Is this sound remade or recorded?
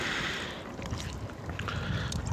remade